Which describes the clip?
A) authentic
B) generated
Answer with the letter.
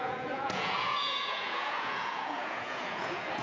B